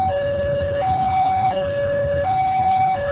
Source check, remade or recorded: remade